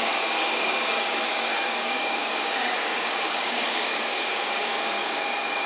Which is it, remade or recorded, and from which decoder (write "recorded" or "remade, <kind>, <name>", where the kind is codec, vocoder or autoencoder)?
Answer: remade, codec, DAC